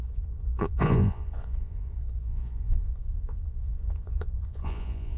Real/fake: fake